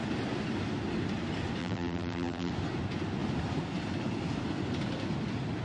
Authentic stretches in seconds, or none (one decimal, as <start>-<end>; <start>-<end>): 0.0-1.6; 2.5-5.6